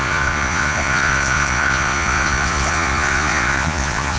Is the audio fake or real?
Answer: fake